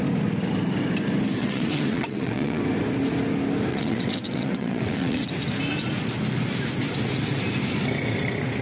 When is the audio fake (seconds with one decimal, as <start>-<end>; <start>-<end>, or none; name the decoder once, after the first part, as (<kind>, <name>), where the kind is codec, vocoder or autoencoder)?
1.4-2.6 (vocoder, WaveNeXt); 3.7-5.3